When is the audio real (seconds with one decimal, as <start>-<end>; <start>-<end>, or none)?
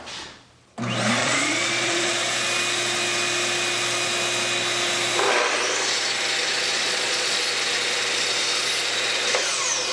0.0-1.2; 2.1-6.7; 7.4-9.9